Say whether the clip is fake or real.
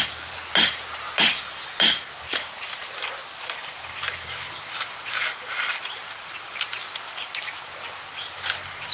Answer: real